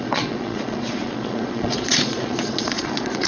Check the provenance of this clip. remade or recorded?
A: remade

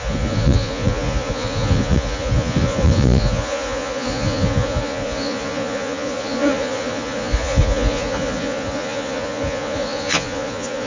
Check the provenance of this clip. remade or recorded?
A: remade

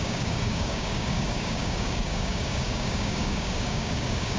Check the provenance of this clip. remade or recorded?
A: remade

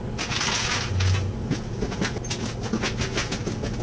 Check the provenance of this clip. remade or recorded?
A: recorded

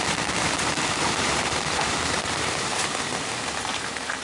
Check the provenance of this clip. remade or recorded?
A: remade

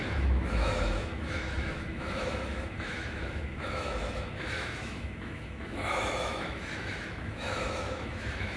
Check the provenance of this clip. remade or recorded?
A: remade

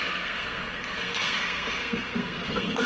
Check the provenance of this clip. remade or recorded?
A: remade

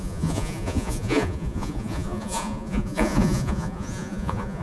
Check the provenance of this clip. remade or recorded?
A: remade